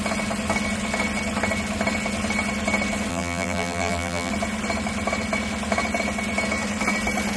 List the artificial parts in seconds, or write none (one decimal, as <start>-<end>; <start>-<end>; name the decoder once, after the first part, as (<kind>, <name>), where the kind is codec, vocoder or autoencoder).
3.1-4.3 (vocoder, BigVGAN v2)